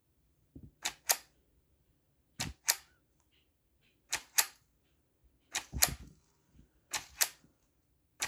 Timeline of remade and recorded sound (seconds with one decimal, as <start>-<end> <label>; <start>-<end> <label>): 0.0-5.2 remade; 5.2-6.4 recorded; 6.4-8.3 remade